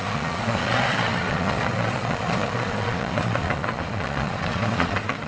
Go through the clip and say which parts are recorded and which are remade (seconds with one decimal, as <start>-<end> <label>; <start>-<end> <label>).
0.0-5.3 remade